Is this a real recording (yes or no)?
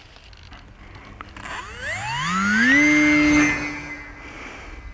yes